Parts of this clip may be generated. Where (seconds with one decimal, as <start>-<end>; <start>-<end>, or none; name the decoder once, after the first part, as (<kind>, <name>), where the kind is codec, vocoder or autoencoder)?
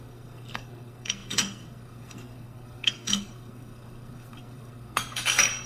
0.0-5.7 (codec, SNAC)